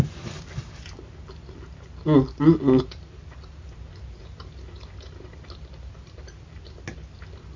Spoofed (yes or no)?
no